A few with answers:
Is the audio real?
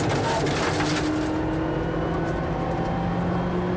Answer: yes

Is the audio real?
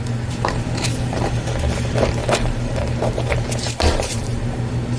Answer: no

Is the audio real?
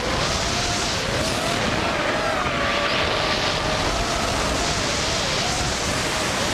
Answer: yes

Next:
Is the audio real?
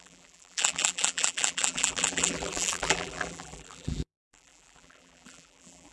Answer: no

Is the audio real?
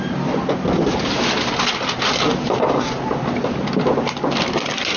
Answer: yes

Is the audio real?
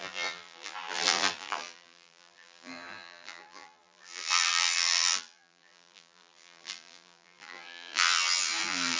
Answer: no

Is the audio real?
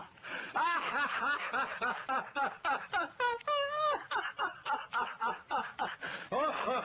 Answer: yes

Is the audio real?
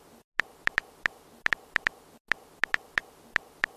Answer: yes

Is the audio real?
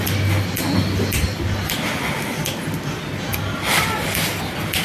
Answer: yes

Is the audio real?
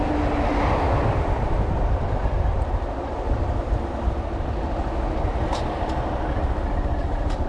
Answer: yes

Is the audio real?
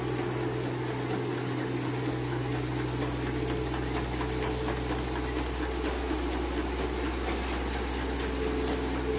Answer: yes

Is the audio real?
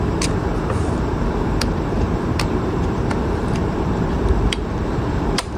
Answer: no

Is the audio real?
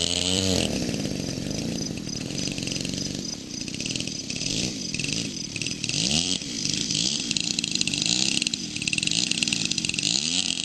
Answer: no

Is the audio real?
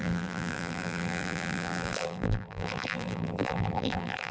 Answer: no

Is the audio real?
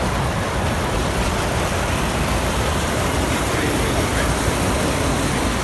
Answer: no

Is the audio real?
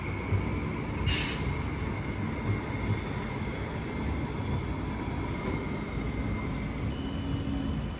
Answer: yes